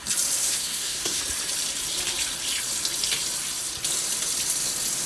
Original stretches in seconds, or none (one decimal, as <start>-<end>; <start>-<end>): 0.0-0.4; 1.2-5.1